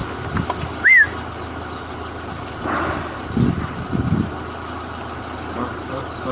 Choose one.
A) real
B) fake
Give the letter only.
A